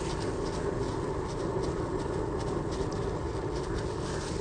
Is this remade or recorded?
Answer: recorded